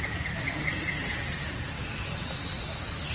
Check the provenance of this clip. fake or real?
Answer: real